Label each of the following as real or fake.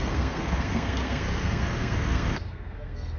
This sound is fake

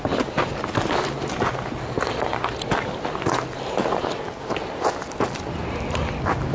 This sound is real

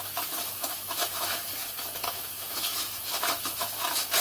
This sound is fake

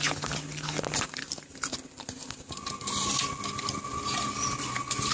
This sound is real